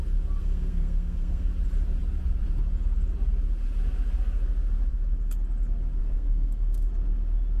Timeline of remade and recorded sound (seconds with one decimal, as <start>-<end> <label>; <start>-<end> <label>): 0.0-0.4 recorded; 0.4-1.5 remade; 1.5-6.0 recorded; 6.0-6.9 remade; 6.9-7.6 recorded